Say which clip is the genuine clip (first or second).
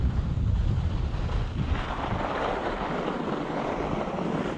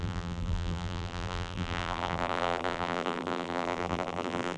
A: first